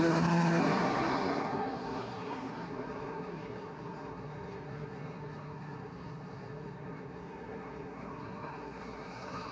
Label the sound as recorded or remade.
remade